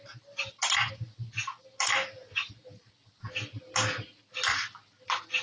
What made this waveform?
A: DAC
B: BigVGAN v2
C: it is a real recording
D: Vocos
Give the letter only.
C